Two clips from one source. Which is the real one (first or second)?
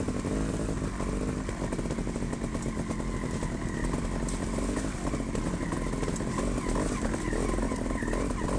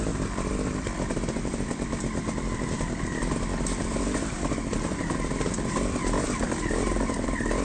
first